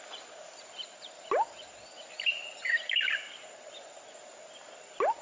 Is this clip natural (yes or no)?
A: yes